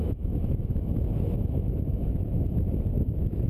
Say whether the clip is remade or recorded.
remade